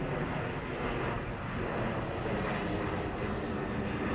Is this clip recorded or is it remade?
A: recorded